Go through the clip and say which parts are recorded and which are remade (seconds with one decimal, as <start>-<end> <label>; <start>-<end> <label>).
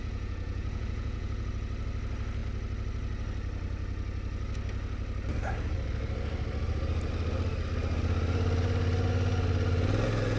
0.0-1.5 remade; 1.5-10.4 recorded